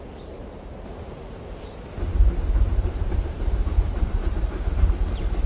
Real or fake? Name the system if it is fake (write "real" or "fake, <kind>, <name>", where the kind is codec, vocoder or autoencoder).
fake, vocoder, BigVGAN v2